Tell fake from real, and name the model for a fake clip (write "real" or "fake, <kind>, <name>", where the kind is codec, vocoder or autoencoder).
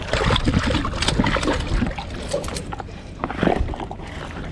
real